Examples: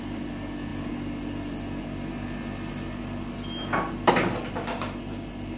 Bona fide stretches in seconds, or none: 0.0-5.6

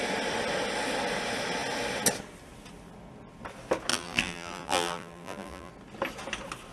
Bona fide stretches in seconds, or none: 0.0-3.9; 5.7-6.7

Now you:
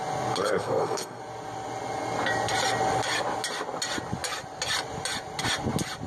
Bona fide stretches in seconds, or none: 0.0-0.4; 1.2-6.1

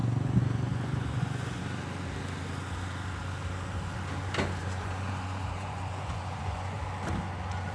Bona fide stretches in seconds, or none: 1.6-4.6; 6.8-7.7

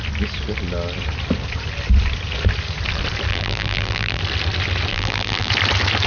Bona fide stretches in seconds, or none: 0.0-3.3; 4.2-4.9; 5.5-6.1